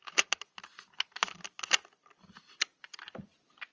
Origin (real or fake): real